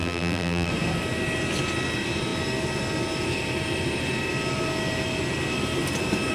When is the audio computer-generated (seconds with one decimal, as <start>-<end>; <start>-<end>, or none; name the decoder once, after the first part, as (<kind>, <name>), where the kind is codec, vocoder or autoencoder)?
0.0-0.7 (vocoder, BigVGAN v2)